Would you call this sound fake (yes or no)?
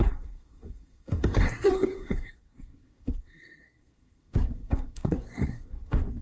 yes